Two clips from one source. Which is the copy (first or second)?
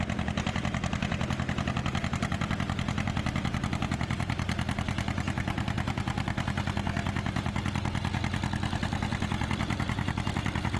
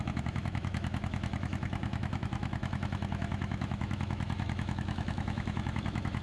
second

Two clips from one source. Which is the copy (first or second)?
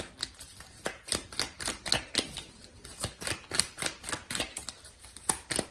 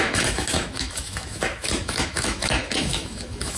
second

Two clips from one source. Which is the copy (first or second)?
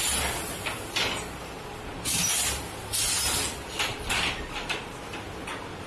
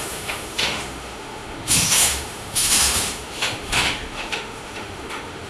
second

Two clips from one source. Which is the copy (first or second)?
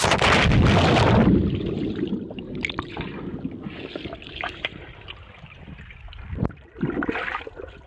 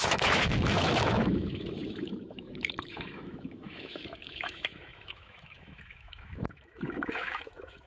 second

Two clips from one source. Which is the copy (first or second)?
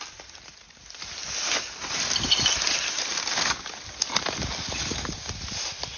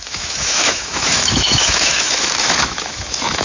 second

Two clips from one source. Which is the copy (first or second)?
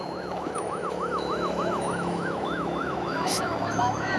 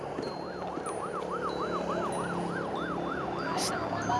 first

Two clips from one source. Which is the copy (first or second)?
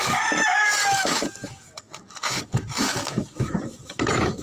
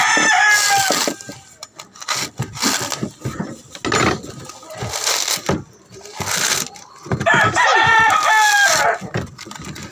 first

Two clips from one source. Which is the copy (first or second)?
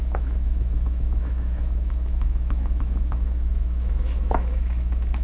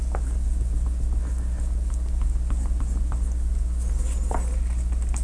first